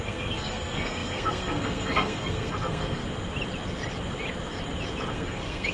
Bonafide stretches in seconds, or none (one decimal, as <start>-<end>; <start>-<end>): 3.0-5.1